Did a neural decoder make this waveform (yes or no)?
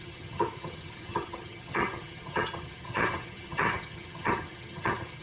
yes